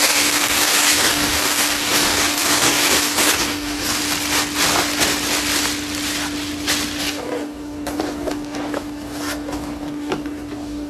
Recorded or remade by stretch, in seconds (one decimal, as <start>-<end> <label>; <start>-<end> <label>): 0.0-4.0 remade; 4.0-7.0 recorded; 7.0-10.9 remade